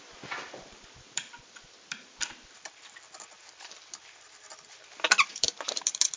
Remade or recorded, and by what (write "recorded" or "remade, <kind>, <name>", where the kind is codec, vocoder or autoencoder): remade, vocoder, BigVGAN v2